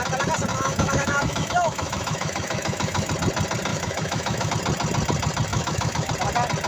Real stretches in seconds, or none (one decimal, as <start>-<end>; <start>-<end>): 0.0-0.5; 3.1-3.7; 4.5-5.5; 6.1-6.7